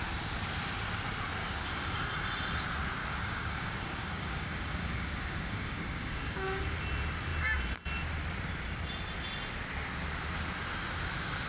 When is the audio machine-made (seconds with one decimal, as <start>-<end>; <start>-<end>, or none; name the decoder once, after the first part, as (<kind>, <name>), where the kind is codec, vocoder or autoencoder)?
1.4-2.1 (codec, DAC); 3.0-6.6